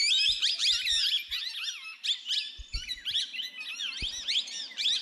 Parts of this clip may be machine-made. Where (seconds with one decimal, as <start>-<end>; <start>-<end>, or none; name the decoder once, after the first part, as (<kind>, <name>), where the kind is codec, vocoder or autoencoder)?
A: 0.0-0.5 (vocoder, BigVGAN v2)